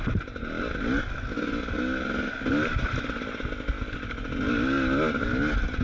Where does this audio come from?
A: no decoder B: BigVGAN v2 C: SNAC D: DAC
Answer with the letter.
A